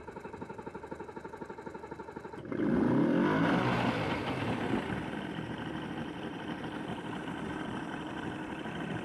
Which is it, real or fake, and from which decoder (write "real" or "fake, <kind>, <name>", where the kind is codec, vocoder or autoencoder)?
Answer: real